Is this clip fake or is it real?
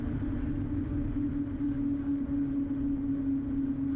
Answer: real